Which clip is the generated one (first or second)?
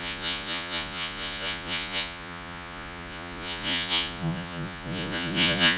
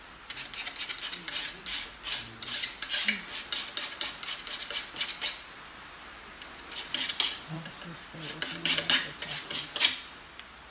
first